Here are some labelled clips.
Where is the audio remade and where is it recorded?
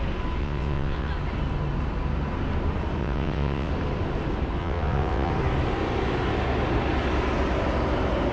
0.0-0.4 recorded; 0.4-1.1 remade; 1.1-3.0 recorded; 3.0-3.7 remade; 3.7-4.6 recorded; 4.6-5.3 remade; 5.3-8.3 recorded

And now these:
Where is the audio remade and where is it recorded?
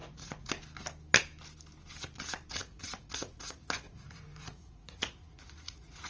0.0-0.5 remade; 0.5-2.5 recorded; 2.5-6.1 remade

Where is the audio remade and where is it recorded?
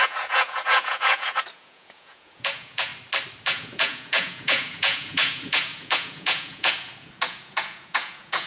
0.0-2.9 remade; 2.9-3.4 recorded; 3.4-8.5 remade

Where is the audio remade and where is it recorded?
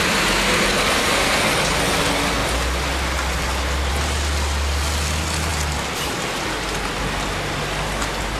0.0-1.0 recorded; 1.0-1.5 remade; 1.5-8.4 recorded